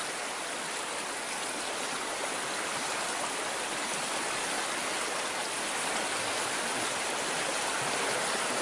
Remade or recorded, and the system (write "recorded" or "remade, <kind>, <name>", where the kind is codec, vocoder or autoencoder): recorded